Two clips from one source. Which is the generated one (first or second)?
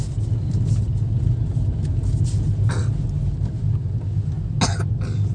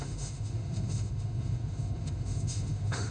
second